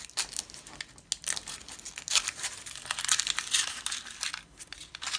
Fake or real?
real